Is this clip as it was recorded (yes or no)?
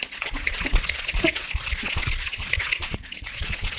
no